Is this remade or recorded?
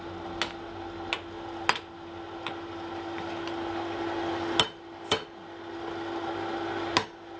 recorded